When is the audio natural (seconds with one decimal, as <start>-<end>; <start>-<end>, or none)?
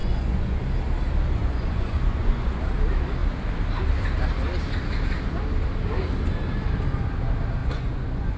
0.6-1.4; 2.6-7.6